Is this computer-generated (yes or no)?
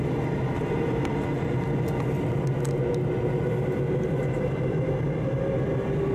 no